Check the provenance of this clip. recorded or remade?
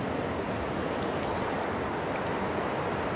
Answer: recorded